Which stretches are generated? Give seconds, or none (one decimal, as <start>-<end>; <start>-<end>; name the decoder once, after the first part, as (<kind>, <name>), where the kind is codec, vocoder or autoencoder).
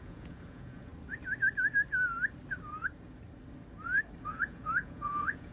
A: 0.0-0.9 (vocoder, Vocos); 4.2-5.5